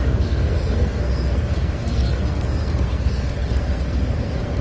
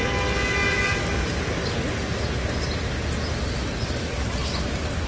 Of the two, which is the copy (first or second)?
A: first